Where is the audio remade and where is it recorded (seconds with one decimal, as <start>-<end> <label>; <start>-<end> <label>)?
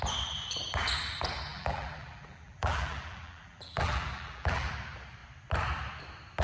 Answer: 0.0-1.5 recorded; 1.5-4.7 remade; 4.7-6.4 recorded